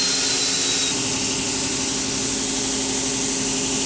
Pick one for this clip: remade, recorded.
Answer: recorded